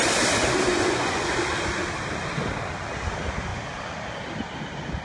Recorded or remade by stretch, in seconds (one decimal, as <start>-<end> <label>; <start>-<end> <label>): 0.0-0.7 recorded; 0.7-1.3 remade; 1.3-5.0 recorded